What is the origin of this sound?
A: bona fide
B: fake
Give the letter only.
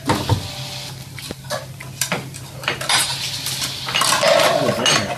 A